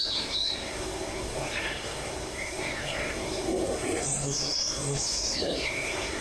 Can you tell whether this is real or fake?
fake